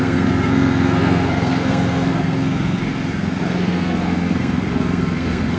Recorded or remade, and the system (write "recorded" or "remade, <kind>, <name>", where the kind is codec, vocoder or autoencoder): remade, codec, SNAC